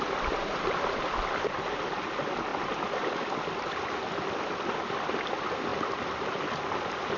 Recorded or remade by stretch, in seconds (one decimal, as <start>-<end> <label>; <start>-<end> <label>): 0.0-7.2 recorded